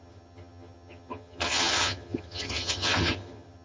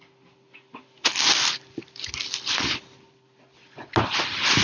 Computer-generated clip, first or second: first